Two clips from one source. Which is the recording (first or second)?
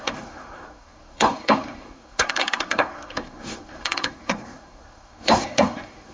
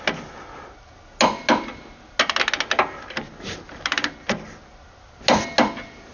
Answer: second